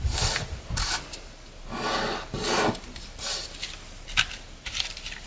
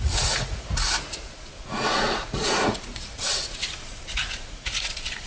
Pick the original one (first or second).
first